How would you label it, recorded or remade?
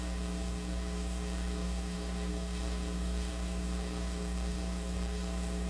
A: remade